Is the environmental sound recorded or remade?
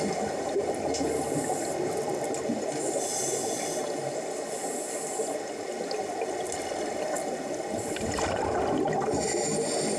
recorded